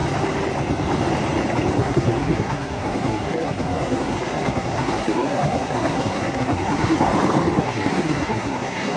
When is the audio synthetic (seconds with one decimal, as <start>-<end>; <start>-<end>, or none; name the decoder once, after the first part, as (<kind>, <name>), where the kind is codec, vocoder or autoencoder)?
1.8-7.1 (codec, SNAC); 7.6-9.0

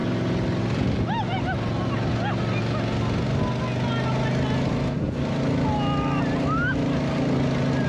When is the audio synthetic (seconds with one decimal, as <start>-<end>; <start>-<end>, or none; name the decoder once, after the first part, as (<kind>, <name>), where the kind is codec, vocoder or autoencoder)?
none

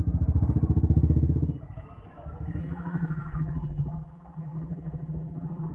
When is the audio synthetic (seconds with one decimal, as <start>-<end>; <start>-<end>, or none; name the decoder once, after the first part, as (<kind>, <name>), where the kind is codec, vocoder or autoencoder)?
2.6-5.7 (vocoder, BigVGAN v2)

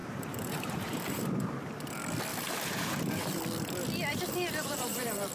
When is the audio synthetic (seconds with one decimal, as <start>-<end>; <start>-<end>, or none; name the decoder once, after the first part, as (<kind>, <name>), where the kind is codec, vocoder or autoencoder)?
0.0-1.6 (vocoder, BigVGAN v2); 2.3-3.4; 4.1-5.3